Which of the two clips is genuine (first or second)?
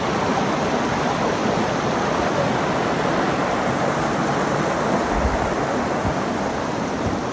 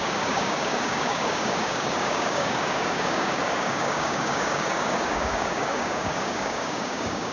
first